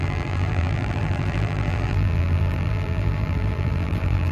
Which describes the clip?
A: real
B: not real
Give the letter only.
B